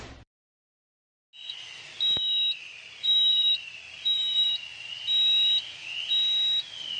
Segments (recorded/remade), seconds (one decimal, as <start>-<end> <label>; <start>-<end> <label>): 0.0-2.6 recorded; 2.6-4.5 remade; 4.5-7.0 recorded